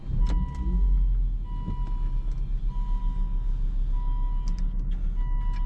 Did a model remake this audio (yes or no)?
no